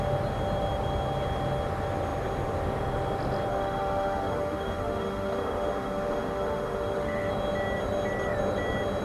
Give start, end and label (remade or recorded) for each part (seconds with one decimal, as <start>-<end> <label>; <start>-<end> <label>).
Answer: 0.0-3.5 recorded; 3.5-7.3 remade; 7.3-9.0 recorded